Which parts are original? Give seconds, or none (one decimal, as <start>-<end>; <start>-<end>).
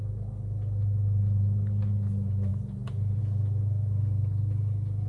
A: 0.0-5.1